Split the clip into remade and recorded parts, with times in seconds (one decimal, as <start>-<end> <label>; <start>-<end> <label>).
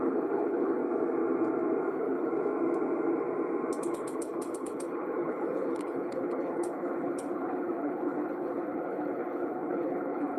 0.0-0.8 remade; 0.8-1.9 recorded; 1.9-2.3 remade; 2.3-3.8 recorded; 3.8-10.4 remade